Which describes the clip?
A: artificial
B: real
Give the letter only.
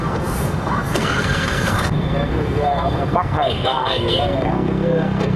A